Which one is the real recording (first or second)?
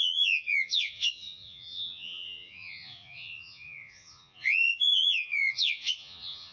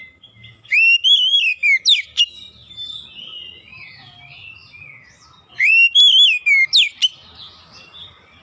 second